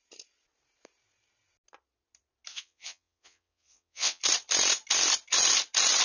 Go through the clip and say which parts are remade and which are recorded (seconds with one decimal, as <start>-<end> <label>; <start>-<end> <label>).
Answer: 0.0-2.5 recorded; 2.5-4.2 remade; 4.2-6.0 recorded